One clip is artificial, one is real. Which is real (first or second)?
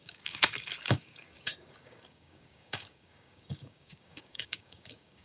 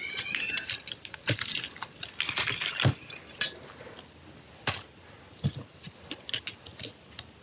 second